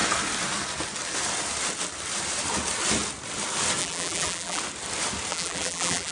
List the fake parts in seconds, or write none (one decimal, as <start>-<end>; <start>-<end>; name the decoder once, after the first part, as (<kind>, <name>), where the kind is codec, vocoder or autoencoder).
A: 3.8-4.6 (vocoder, BigVGAN v2); 5.3-6.1

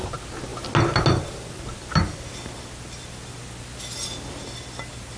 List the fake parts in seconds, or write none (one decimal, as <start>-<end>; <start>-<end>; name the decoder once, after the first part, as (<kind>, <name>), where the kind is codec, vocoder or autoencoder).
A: none